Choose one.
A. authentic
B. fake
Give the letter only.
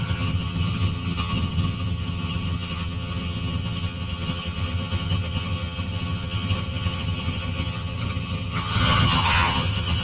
B